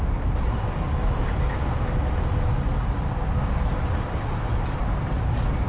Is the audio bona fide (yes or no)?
yes